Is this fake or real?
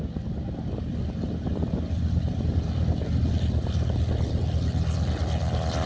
real